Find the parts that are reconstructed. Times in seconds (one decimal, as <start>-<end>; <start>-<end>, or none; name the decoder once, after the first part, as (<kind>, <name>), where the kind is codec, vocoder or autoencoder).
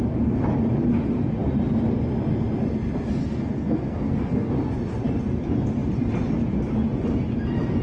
3.2-4.5 (codec, SNAC)